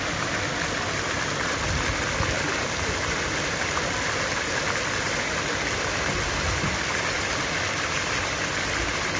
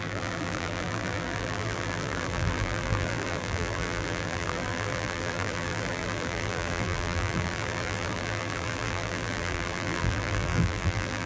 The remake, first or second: second